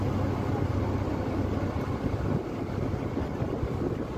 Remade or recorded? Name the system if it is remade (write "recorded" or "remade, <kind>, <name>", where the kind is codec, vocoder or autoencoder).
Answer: recorded